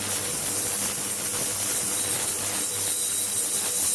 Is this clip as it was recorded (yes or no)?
yes